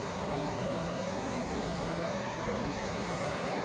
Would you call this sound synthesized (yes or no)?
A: yes